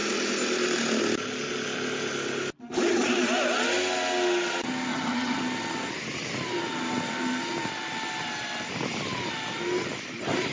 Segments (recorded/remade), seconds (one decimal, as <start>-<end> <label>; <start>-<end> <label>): 0.0-4.9 recorded; 4.9-5.4 remade; 5.4-10.5 recorded